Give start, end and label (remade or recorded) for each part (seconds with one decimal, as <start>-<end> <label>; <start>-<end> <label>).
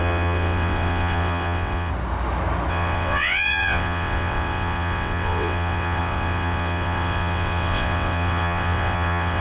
0.0-1.9 remade; 1.9-2.7 recorded; 2.7-9.4 remade